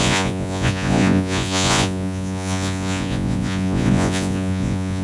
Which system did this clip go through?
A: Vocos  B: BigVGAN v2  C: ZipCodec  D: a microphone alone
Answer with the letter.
A